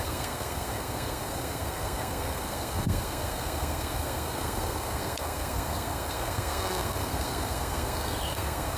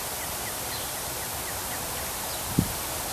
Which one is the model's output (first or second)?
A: first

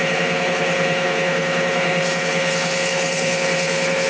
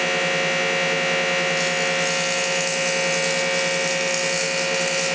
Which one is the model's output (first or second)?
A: first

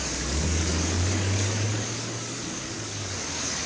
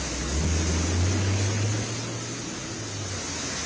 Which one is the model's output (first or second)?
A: first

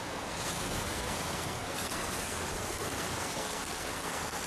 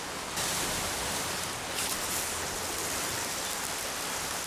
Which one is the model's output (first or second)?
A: first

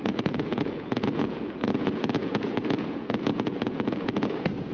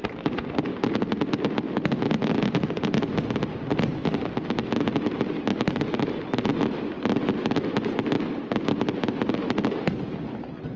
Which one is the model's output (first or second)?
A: first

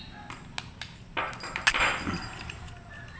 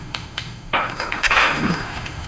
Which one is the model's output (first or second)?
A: second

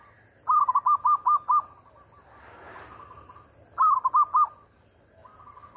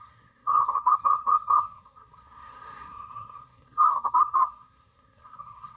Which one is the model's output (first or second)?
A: second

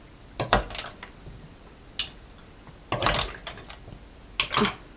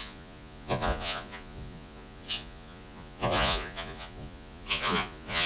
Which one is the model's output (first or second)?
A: second